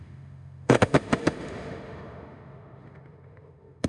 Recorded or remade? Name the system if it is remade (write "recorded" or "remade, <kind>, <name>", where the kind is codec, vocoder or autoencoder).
remade, autoencoder, DAC-VAE